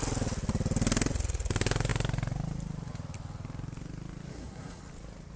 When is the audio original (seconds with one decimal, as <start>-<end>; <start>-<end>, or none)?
0.0-4.3; 4.8-5.4